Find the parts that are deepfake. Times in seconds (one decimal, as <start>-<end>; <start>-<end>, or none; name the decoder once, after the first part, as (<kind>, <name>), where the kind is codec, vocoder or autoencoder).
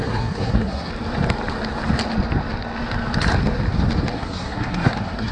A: 0.0-0.9 (codec, SNAC); 4.1-5.3